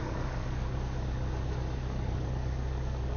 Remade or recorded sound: remade